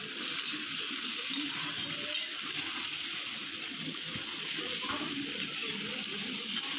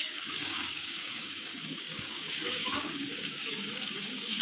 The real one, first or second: first